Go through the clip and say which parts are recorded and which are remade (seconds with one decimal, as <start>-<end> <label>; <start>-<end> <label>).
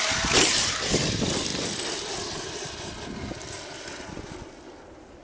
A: 0.0-5.2 recorded